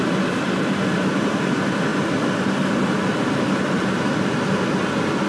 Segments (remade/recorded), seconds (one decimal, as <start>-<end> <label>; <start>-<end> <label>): 0.0-5.3 recorded